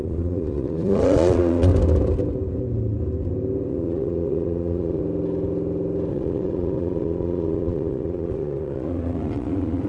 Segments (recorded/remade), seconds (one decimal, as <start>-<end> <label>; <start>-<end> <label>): 0.0-1.7 remade; 1.7-3.7 recorded; 3.7-5.0 remade; 5.0-6.1 recorded; 6.1-9.9 remade